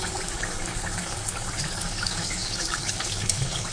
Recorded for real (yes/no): no